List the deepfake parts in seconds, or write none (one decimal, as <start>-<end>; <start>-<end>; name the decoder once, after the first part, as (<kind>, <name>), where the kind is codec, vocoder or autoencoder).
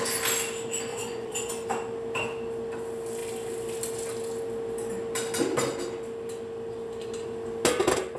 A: 0.9-1.5 (vocoder, Vocos)